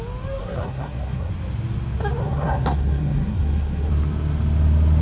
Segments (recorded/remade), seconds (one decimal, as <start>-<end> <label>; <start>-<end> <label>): 0.0-0.4 recorded; 0.4-1.3 remade; 1.3-2.2 recorded; 2.2-3.9 remade; 3.9-5.0 recorded